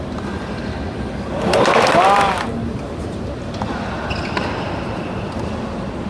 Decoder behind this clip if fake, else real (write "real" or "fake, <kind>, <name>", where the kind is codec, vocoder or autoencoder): real